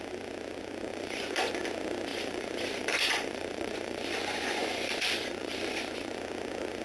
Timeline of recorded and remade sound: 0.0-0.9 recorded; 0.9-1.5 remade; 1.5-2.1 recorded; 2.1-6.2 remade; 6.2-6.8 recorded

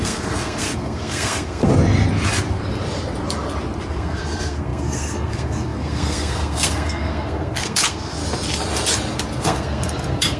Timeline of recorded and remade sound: 0.0-1.7 remade; 1.7-3.9 recorded; 3.9-8.2 remade; 8.2-9.4 recorded; 9.4-10.4 remade